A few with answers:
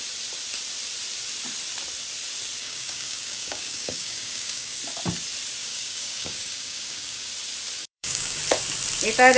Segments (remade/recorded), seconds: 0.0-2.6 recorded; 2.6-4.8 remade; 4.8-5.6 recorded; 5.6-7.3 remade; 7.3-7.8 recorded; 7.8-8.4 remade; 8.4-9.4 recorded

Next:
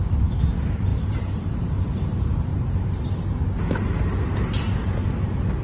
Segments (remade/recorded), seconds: 0.0-0.9 recorded; 0.9-1.7 remade; 1.7-5.6 recorded

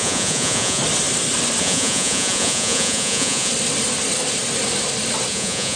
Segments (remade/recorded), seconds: 0.0-0.8 remade; 0.8-1.6 recorded; 1.6-3.5 remade; 3.5-5.3 recorded; 5.3-5.8 remade

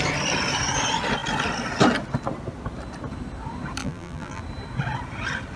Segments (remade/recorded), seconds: 0.0-3.8 recorded; 3.8-4.4 remade; 4.4-5.6 recorded

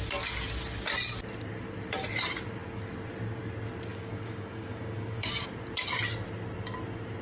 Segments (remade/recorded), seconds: 0.0-3.9 recorded; 3.9-5.5 remade; 5.5-7.2 recorded